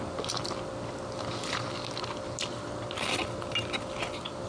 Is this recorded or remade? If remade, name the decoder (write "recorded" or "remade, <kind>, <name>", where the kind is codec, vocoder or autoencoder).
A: recorded